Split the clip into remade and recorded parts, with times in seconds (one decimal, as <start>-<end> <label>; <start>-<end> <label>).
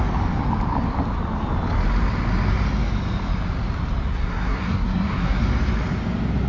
0.0-4.1 recorded; 4.1-5.4 remade; 5.4-6.5 recorded